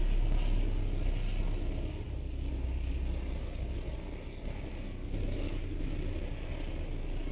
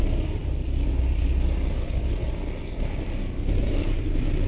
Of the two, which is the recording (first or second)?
first